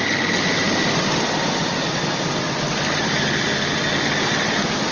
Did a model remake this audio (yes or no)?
no